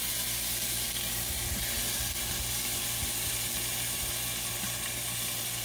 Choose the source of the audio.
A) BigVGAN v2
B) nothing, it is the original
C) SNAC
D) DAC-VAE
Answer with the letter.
B